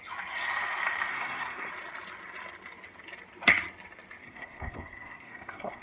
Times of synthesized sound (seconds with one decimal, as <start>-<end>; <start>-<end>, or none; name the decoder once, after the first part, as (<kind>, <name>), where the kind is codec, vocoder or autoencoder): 1.1-1.7 (codec, SNAC); 4.2-5.8